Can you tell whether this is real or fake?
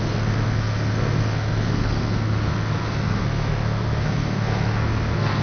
fake